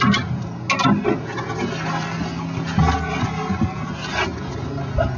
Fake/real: real